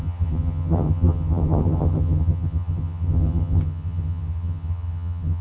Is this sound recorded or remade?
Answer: remade